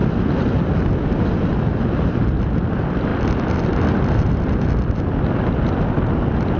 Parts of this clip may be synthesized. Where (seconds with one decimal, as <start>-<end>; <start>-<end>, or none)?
3.1-5.3